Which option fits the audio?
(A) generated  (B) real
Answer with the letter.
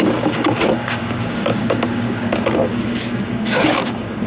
A